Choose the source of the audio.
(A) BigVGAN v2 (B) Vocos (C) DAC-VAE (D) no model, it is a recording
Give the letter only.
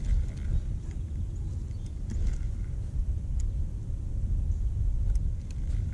D